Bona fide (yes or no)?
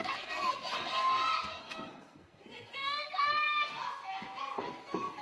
no